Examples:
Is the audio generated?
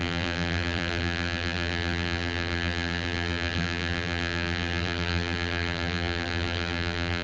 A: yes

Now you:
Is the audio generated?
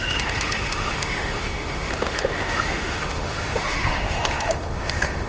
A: yes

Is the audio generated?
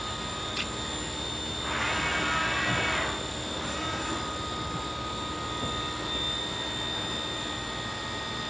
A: no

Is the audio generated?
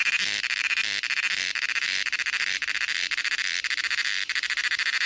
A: no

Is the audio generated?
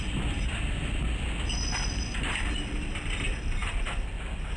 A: no